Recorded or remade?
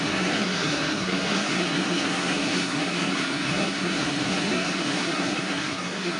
remade